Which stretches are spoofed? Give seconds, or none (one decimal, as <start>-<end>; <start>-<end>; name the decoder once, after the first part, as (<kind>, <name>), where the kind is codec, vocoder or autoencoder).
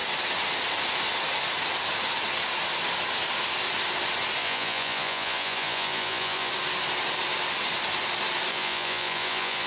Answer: 4.4-6.5 (vocoder, Vocos); 8.5-9.7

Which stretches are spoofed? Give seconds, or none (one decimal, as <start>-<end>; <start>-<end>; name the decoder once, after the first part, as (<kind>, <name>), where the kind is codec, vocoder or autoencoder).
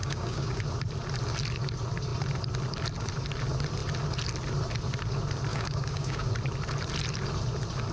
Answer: 0.0-0.6 (codec, DAC); 5.5-6.3